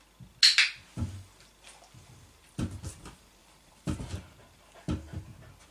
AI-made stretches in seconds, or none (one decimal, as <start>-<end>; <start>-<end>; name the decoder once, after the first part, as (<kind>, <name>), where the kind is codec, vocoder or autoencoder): 3.4-4.4 (vocoder, BigVGAN v2)